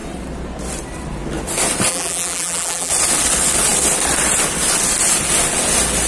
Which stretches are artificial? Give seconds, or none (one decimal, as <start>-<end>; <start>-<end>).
1.9-2.9